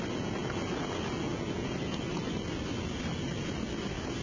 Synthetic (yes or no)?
no